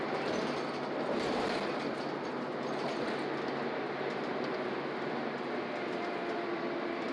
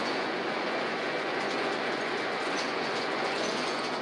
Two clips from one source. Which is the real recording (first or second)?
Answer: first